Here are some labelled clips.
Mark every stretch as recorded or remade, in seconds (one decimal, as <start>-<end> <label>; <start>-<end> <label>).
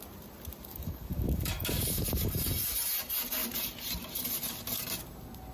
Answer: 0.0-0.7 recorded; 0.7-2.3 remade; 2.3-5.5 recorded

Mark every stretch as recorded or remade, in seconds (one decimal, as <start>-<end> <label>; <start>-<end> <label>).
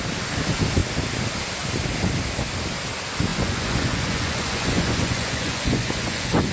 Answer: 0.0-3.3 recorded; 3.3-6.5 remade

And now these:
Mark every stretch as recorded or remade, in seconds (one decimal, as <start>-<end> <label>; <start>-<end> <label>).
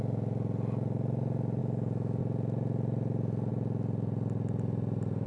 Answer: 0.0-1.6 recorded; 1.6-2.2 remade; 2.2-5.3 recorded